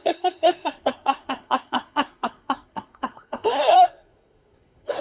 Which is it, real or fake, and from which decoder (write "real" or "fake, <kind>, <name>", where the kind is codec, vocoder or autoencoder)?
fake, codec, SNAC